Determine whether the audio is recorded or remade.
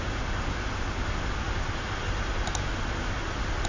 recorded